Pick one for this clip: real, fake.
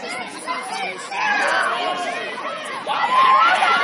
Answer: fake